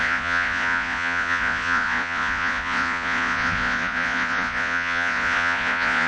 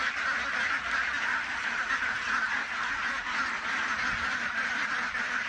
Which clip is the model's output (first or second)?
first